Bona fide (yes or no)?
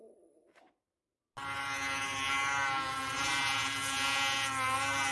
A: yes